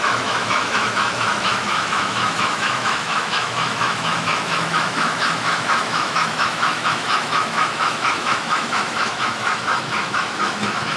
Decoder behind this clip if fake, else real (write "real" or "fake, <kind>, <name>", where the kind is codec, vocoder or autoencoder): fake, autoencoder, DAC-VAE